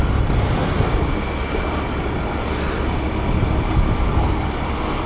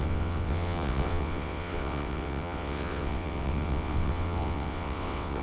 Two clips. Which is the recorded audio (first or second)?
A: first